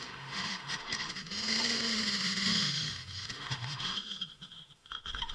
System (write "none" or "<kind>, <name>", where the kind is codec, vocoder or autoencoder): autoencoder, DAC-VAE